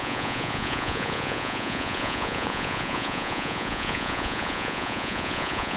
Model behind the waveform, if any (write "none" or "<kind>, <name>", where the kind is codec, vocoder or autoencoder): vocoder, Vocos